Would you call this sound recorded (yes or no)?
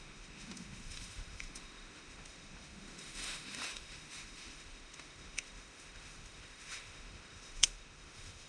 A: no